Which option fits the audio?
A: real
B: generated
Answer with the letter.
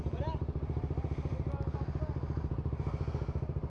A